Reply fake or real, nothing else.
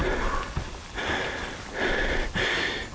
real